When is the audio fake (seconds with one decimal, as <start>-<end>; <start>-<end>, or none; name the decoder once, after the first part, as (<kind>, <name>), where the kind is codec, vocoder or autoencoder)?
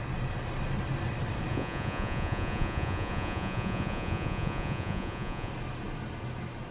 1.5-5.5 (vocoder, Vocos)